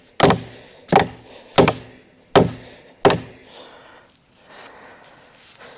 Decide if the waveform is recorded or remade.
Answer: recorded